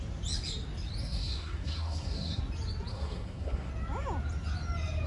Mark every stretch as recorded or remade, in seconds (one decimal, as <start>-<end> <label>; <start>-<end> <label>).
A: 0.0-1.0 recorded; 1.0-2.4 remade; 2.4-2.9 recorded; 2.9-3.7 remade; 3.7-5.1 recorded